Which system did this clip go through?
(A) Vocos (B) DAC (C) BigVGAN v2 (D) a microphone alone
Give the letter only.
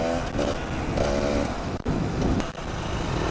D